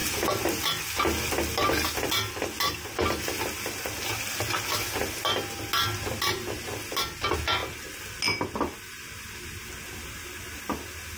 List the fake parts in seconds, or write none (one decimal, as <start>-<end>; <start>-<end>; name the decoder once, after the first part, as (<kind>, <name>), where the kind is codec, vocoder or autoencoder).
none